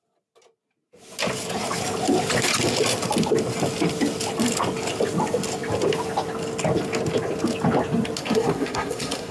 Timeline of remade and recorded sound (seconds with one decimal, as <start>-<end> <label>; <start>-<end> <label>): 0.0-8.2 recorded; 8.2-9.3 remade